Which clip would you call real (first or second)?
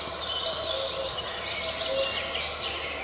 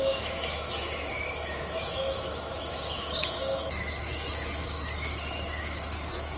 first